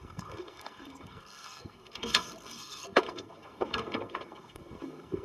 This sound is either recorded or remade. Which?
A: remade